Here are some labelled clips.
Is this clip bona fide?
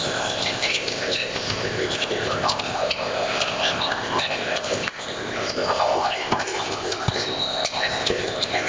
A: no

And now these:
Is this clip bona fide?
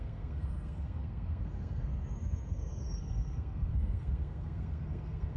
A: no